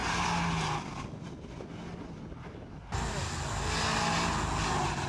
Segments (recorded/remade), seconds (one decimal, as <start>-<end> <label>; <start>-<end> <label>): 0.0-5.1 recorded